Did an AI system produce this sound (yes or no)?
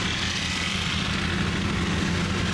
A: no